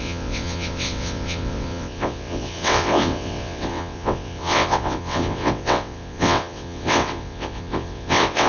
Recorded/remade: remade